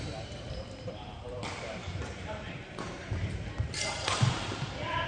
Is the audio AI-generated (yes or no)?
yes